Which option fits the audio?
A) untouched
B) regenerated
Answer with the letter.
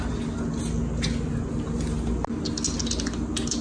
A